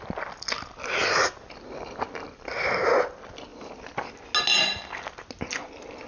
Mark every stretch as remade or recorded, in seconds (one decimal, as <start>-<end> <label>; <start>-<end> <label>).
0.0-1.0 recorded; 1.0-2.7 remade; 2.7-3.5 recorded; 3.5-4.1 remade; 4.1-6.1 recorded

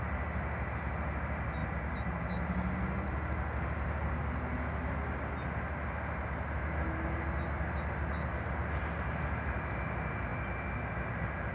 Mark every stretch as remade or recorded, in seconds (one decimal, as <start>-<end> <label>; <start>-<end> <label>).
0.0-11.5 recorded

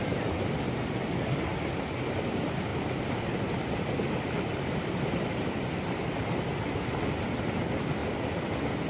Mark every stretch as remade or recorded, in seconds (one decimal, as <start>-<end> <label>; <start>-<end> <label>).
0.0-8.9 recorded